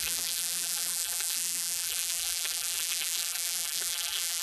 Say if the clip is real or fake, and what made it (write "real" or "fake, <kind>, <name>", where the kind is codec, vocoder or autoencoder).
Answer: fake, vocoder, BigVGAN v2